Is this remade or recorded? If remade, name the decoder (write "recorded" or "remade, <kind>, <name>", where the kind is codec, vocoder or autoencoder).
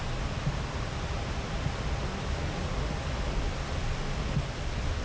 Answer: recorded